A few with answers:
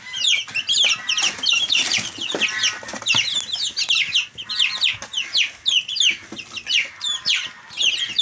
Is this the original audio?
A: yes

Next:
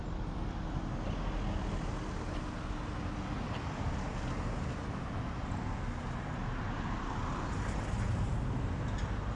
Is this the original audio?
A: yes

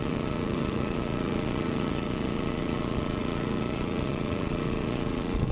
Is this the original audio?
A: no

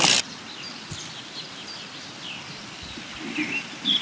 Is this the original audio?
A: yes